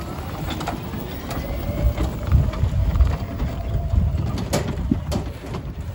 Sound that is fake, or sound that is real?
real